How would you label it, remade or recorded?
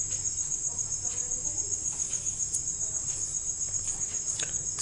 recorded